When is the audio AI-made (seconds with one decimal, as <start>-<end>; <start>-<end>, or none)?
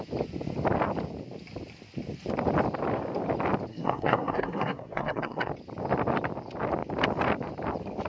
3.7-5.5